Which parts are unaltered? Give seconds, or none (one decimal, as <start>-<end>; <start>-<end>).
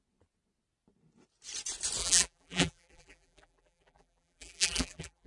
0.0-2.0